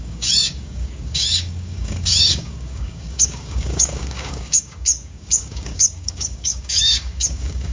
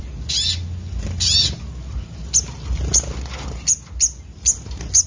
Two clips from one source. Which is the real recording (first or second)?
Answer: second